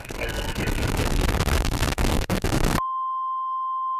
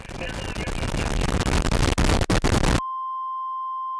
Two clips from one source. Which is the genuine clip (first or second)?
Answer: second